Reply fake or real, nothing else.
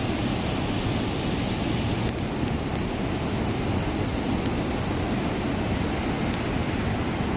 real